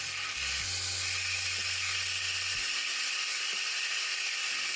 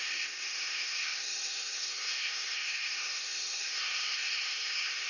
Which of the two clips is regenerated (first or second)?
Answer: second